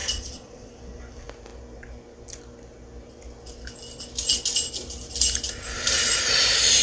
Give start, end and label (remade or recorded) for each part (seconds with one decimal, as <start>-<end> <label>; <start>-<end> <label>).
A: 0.0-0.7 remade; 0.7-6.8 recorded